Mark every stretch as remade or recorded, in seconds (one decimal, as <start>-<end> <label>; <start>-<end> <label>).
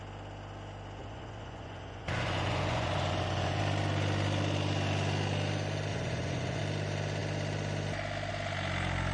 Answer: 0.0-1.0 recorded; 1.0-3.6 remade; 3.6-5.9 recorded; 5.9-6.6 remade; 6.6-9.1 recorded